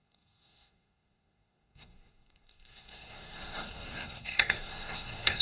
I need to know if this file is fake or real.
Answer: fake